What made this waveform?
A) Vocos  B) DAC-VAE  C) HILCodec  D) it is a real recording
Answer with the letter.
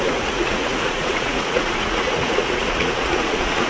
A